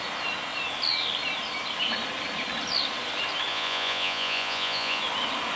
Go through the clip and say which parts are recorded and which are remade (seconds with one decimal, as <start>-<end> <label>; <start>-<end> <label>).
0.0-3.5 recorded; 3.5-5.0 remade; 5.0-5.6 recorded